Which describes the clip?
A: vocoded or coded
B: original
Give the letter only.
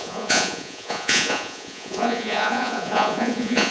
A